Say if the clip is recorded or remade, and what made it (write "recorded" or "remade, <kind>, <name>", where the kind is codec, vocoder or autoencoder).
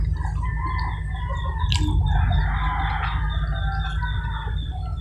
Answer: recorded